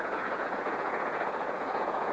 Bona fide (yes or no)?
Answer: no